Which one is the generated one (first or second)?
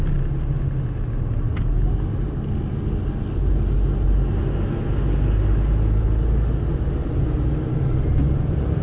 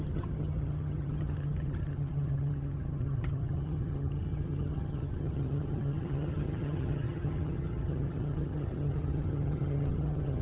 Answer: second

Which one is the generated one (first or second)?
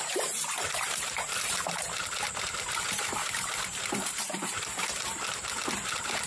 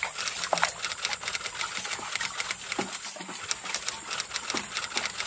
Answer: first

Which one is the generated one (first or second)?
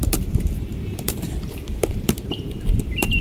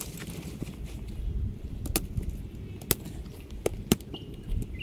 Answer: first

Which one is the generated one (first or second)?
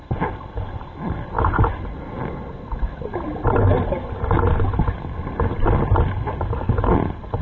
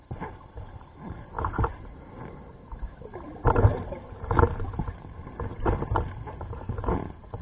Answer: second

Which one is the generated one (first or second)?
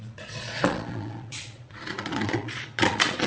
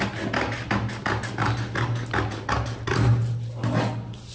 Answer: first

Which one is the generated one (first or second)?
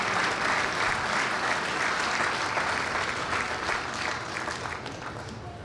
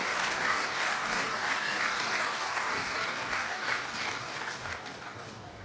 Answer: second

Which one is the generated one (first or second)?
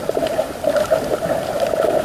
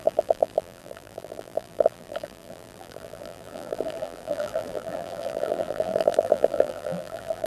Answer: second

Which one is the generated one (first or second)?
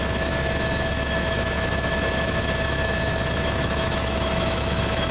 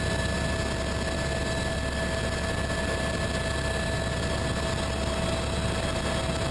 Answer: first